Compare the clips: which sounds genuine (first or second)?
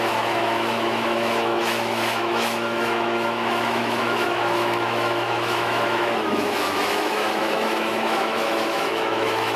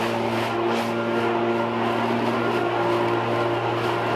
second